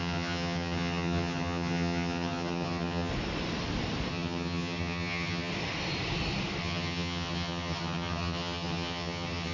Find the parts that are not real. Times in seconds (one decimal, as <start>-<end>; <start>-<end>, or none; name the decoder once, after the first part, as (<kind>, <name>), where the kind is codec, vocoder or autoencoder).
0.0-3.1 (vocoder, HiFi-GAN); 4.1-5.5; 6.6-9.5